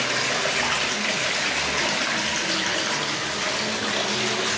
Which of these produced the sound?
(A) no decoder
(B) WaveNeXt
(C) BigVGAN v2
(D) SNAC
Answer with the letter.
A